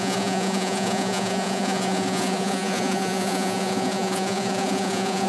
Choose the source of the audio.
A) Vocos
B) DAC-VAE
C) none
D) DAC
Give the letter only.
A